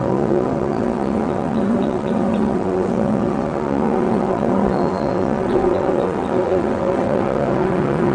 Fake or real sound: fake